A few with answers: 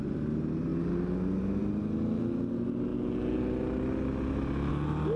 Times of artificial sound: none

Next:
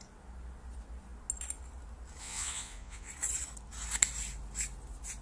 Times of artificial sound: 2.2-3.1 (vocoder, Vocos)